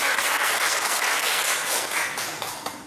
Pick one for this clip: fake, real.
fake